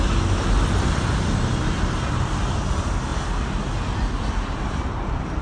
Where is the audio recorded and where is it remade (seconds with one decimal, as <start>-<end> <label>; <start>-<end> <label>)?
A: 0.0-3.1 remade; 3.1-4.3 recorded; 4.3-5.4 remade